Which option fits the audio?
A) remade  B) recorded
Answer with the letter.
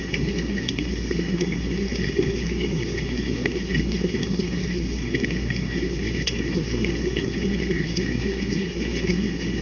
A